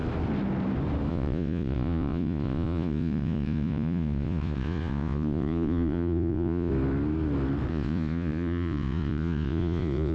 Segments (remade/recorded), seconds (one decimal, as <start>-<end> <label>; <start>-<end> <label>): 0.0-1.1 recorded; 1.1-6.7 remade; 6.7-7.7 recorded; 7.7-10.1 remade